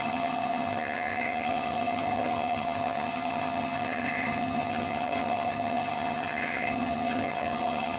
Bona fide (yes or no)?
no